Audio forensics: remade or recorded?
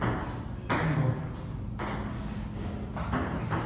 recorded